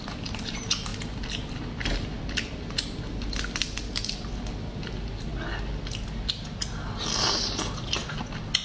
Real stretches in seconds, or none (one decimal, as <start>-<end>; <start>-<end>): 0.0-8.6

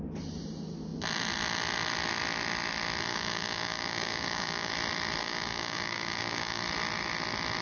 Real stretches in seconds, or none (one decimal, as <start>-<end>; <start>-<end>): 0.0-3.1; 4.7-5.2; 6.6-7.6

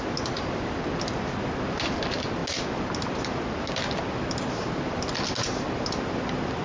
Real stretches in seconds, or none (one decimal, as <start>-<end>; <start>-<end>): 0.0-6.6